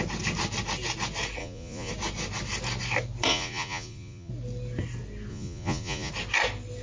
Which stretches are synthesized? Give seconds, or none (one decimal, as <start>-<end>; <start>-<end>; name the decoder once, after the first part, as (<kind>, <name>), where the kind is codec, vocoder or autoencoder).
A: 1.4-1.9 (vocoder, Vocos); 3.3-4.3; 5.3-6.1